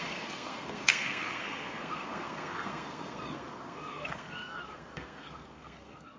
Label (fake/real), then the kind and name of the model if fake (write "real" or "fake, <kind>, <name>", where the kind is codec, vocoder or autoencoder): fake, codec, SNAC